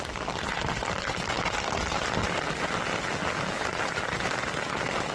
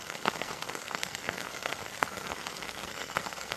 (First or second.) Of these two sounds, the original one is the first